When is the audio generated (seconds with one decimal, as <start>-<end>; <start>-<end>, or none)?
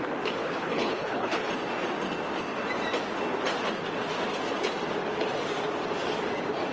0.4-1.5